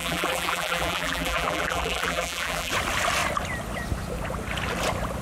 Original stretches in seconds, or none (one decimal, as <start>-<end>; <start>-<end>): 2.7-5.2